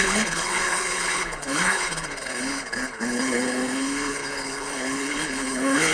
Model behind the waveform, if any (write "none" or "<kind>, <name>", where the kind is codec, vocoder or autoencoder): codec, HILCodec